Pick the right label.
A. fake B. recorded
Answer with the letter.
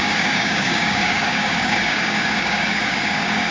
A